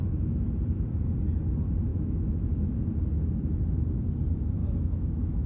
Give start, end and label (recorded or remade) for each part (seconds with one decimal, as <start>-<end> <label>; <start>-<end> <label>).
0.0-0.5 remade; 0.5-1.9 recorded; 1.9-2.7 remade; 2.7-4.6 recorded; 4.6-5.5 remade